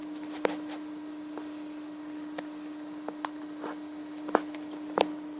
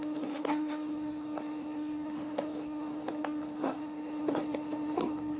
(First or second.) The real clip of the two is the first